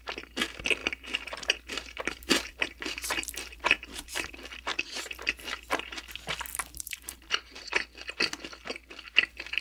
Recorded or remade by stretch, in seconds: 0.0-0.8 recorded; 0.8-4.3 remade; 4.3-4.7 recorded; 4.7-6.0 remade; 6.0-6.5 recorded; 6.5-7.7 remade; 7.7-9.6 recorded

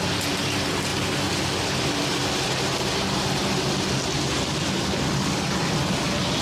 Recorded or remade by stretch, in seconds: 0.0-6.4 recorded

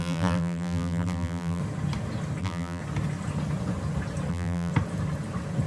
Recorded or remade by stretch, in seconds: 0.0-1.6 remade; 1.6-2.4 recorded; 2.4-2.8 remade; 2.8-4.3 recorded; 4.3-4.7 remade; 4.7-5.7 recorded

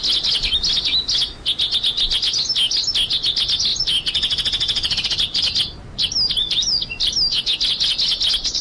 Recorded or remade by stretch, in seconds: 0.0-3.7 recorded; 3.7-5.4 remade; 5.4-6.4 recorded; 6.4-7.1 remade; 7.1-8.6 recorded

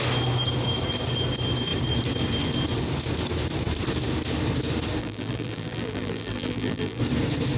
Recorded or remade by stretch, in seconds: 0.0-5.0 recorded; 5.0-7.0 remade; 7.0-7.6 recorded

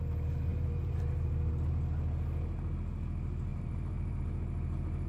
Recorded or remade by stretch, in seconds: 0.0-0.5 recorded; 0.5-1.5 remade; 1.5-3.5 recorded; 3.5-4.2 remade; 4.2-5.1 recorded

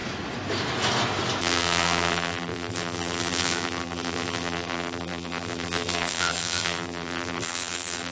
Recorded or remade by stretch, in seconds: 0.0-1.4 recorded; 1.4-8.1 remade